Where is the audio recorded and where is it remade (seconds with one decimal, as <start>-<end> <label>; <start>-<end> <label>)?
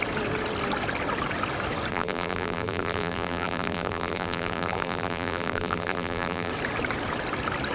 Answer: 0.0-1.9 recorded; 1.9-6.5 remade; 6.5-7.7 recorded